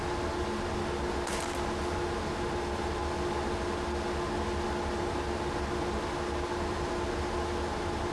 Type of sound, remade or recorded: recorded